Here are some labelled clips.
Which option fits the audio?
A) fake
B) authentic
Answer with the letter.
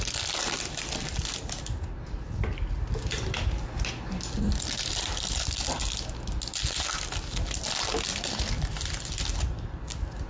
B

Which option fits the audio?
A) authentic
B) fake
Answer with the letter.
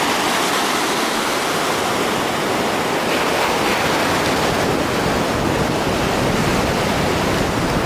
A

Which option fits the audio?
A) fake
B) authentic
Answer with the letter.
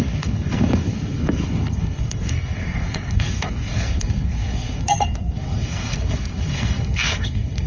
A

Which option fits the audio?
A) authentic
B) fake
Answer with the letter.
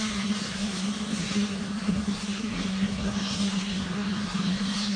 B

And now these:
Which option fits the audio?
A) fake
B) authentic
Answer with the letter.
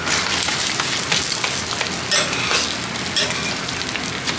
B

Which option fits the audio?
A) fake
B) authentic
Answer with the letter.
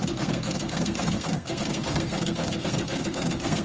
A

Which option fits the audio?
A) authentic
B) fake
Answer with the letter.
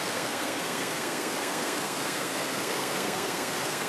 B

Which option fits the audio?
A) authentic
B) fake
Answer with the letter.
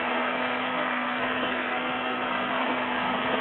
B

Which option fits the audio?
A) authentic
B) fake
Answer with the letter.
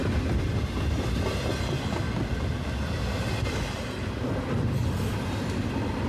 A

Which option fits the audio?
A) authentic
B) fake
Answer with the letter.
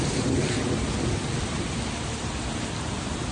A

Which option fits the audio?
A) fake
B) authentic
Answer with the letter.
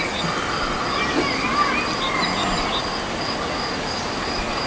B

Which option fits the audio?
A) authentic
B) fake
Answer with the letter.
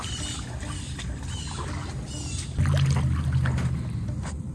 A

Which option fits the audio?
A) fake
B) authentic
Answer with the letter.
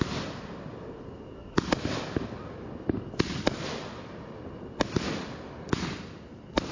B